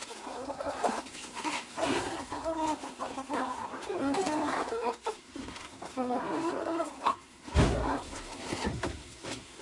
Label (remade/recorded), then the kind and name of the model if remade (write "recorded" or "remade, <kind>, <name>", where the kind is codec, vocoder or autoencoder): remade, codec, SNAC